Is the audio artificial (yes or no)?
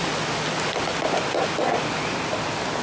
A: no